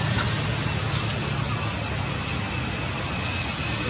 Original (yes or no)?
yes